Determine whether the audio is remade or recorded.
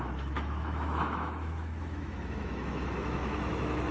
remade